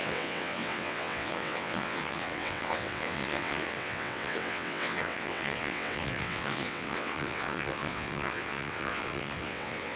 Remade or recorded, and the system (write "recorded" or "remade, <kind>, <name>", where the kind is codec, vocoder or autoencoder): remade, vocoder, WaveNeXt